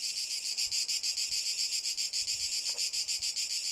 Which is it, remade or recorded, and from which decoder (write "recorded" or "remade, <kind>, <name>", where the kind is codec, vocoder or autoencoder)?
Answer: recorded